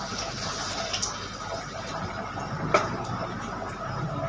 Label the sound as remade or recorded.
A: recorded